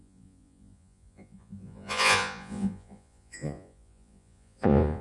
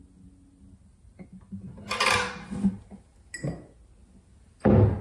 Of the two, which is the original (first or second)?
second